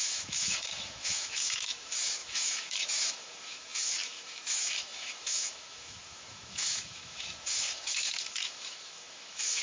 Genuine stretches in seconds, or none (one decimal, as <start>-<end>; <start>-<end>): none